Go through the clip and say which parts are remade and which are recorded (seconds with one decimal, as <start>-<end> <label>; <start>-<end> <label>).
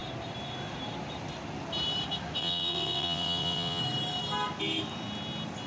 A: 0.0-2.4 recorded; 2.4-3.8 remade; 3.8-5.7 recorded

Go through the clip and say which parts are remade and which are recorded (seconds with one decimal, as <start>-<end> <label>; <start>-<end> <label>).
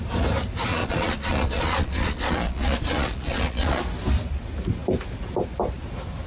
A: 0.0-0.7 recorded; 0.7-3.8 remade; 3.8-6.3 recorded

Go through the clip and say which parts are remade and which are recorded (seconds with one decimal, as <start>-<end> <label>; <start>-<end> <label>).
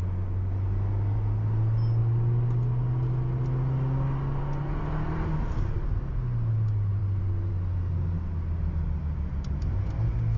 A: 0.0-10.4 recorded